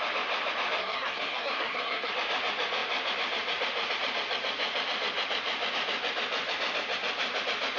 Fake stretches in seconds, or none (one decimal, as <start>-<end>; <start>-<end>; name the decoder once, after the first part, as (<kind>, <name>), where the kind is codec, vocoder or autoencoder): 0.8-2.1 (codec, SNAC)